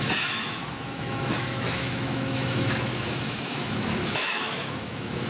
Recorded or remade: remade